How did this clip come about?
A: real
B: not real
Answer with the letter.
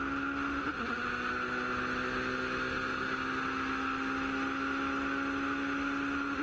A